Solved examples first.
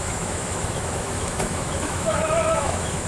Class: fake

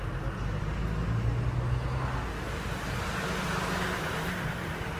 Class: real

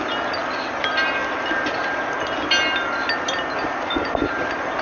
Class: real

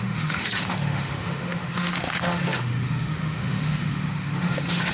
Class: fake